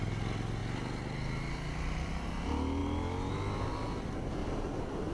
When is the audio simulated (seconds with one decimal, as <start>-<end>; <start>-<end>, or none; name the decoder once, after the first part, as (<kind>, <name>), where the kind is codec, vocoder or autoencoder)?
4.4-5.1 (vocoder, BigVGAN v2)